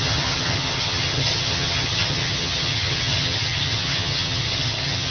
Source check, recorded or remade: remade